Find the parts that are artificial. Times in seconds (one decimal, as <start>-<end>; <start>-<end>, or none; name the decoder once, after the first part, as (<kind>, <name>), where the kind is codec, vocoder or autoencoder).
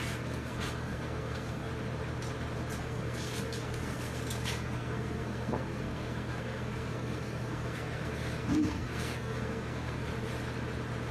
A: 0.0-1.7 (codec, SNAC); 2.8-10.1